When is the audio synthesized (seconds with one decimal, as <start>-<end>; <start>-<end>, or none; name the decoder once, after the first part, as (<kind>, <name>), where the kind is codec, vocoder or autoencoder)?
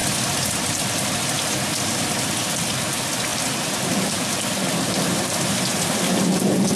none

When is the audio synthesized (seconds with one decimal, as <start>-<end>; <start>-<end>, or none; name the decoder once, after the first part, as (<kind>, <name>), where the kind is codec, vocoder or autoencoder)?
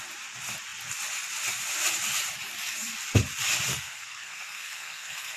3.7-5.4 (codec, SNAC)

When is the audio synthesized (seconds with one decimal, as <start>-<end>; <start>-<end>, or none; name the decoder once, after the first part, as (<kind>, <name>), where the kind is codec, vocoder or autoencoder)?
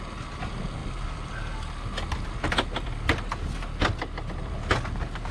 none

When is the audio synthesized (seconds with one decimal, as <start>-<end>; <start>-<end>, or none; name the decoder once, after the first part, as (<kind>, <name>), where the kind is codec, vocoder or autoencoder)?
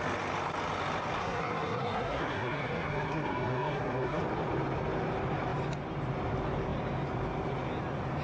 1.2-4.2 (codec, SNAC)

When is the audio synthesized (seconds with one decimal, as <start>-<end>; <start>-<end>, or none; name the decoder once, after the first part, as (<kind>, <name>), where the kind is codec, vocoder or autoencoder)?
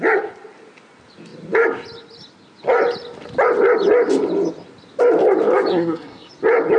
5.7-6.3 (codec, SNAC)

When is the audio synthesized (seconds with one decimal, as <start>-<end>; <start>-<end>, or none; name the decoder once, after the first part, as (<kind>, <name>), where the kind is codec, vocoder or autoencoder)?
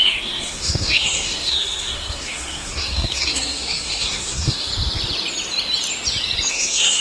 0.0-4.7 (codec, SNAC); 6.5-7.0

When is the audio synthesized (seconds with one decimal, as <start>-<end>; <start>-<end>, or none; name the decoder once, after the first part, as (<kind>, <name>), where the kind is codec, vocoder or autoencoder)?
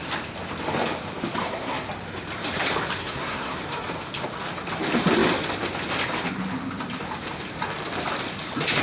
1.4-1.9 (codec, SNAC); 3.0-3.6